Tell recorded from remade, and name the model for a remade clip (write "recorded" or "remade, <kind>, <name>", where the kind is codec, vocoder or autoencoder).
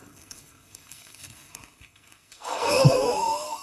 remade, codec, SNAC